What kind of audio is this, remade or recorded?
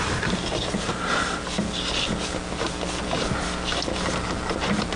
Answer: recorded